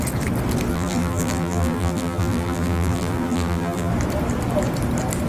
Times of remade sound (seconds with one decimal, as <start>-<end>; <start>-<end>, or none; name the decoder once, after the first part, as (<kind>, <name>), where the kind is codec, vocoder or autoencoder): 0.7-3.9 (vocoder, BigVGAN v2)